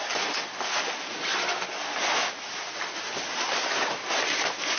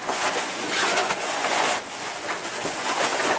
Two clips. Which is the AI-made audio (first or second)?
second